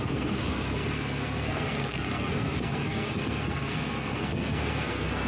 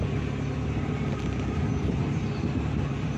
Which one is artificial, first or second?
first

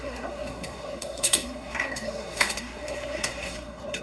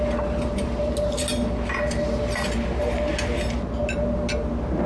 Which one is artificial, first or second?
first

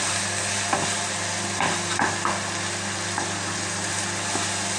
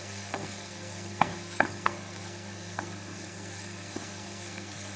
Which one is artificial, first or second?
second